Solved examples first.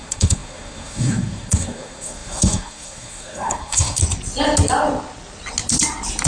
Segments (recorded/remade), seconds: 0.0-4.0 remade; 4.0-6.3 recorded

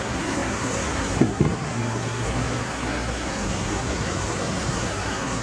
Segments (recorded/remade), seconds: 0.0-5.4 remade

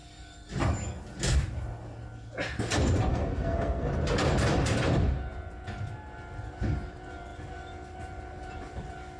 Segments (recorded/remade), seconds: 0.0-3.1 recorded; 3.1-3.9 remade; 3.9-9.2 recorded

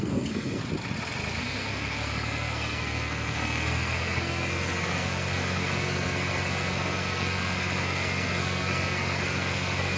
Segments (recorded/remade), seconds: 0.0-0.6 remade; 0.6-1.4 recorded; 1.4-10.0 remade

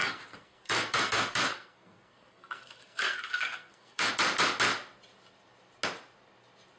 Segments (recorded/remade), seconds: 0.0-4.1 remade; 4.1-6.8 recorded

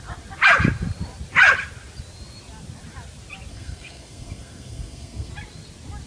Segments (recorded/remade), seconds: 0.0-3.5 recorded; 3.5-5.3 remade; 5.3-6.1 recorded

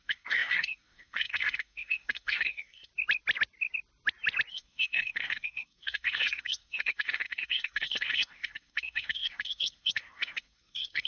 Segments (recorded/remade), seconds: 0.0-2.9 remade; 2.9-4.5 recorded; 4.5-11.1 remade

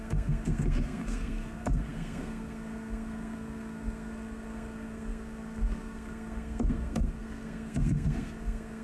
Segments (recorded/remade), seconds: 0.0-8.8 remade